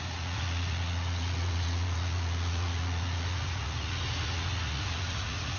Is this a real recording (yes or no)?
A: no